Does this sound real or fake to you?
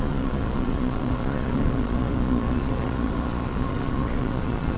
fake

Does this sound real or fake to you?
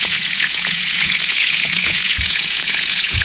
fake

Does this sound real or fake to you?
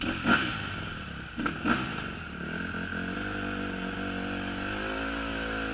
real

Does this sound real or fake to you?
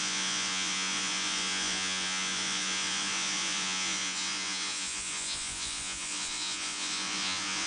fake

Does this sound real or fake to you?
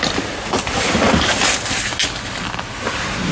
real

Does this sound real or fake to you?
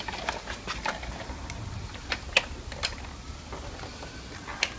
real